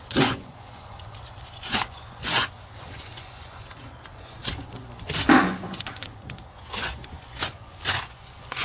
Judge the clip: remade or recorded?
remade